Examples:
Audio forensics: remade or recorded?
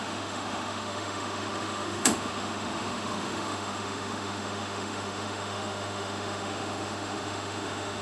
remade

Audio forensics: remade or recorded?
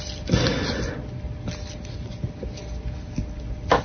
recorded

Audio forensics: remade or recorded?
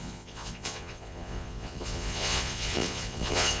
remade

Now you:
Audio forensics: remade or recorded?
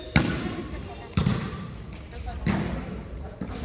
remade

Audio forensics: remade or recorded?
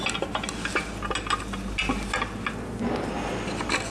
recorded